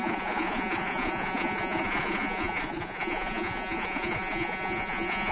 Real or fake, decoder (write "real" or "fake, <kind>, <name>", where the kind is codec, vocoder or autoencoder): fake, vocoder, Vocos